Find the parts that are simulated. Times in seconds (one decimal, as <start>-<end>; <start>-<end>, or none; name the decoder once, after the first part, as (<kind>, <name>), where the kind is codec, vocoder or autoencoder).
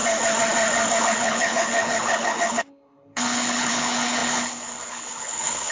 1.0-5.7 (codec, HILCodec)